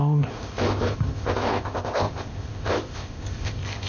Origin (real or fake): fake